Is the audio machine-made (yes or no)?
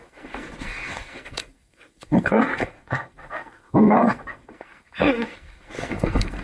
yes